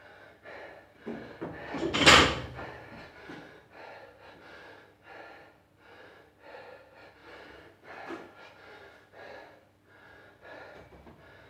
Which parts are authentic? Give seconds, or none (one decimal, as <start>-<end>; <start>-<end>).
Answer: 0.0-11.5